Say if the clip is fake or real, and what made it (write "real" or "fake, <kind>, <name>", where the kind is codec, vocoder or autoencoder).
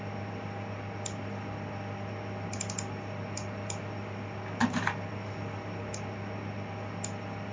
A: real